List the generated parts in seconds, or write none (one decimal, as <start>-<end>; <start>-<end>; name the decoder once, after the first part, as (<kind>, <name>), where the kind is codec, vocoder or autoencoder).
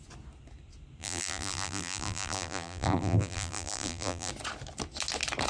1.0-4.3 (vocoder, BigVGAN v2)